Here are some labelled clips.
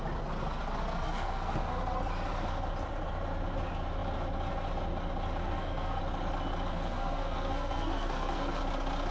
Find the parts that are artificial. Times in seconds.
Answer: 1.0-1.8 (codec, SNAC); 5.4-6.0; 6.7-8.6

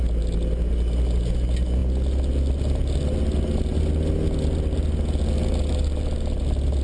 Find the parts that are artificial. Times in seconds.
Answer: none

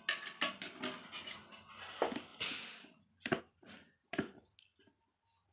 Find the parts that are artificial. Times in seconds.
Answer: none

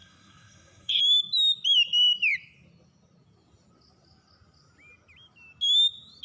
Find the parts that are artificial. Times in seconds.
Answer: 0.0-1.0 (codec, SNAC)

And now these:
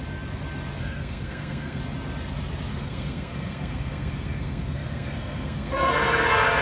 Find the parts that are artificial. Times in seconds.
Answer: 0.8-1.8 (codec, SNAC); 2.7-6.6

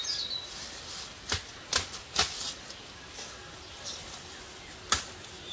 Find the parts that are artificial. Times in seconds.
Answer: none

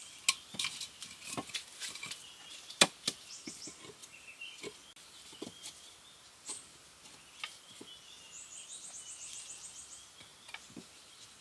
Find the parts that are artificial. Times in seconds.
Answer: none

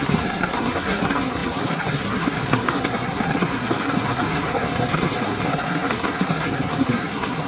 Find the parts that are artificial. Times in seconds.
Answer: 0.0-7.5 (codec, SNAC)